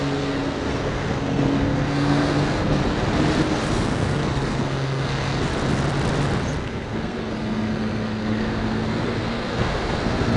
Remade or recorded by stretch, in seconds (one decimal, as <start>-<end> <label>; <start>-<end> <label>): 0.0-2.8 remade; 2.8-3.7 recorded; 3.7-5.5 remade; 5.5-6.6 recorded; 6.6-10.4 remade